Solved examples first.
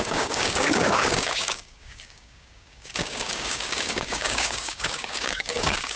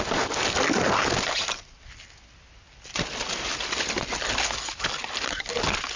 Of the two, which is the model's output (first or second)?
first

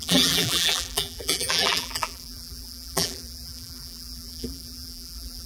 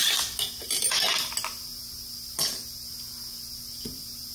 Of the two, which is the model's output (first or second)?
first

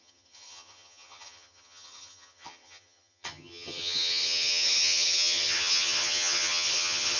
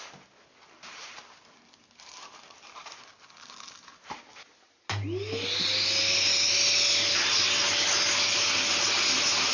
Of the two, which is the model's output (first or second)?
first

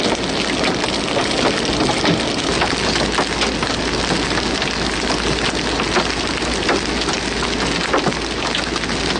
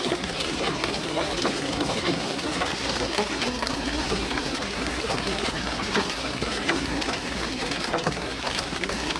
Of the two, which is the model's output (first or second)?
second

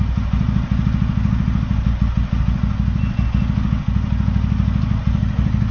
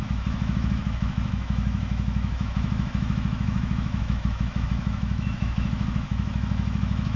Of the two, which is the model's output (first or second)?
second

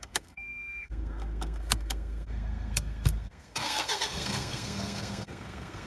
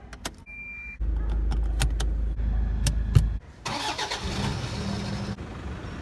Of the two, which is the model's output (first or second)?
first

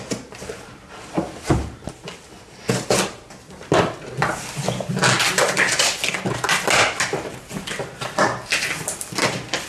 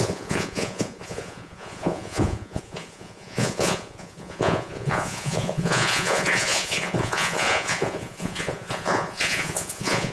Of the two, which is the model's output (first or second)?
second